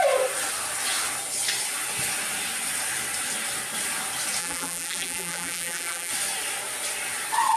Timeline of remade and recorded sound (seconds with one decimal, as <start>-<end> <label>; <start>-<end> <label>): 0.0-4.4 recorded; 4.4-6.1 remade; 6.1-7.6 recorded